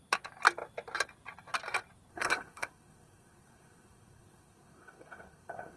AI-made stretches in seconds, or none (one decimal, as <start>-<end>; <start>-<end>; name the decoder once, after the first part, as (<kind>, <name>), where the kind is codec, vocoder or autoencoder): 2.1-5.8 (codec, SNAC)